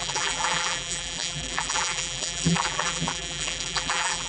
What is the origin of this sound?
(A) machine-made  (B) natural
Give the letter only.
A